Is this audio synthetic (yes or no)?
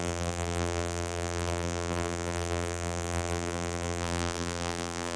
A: yes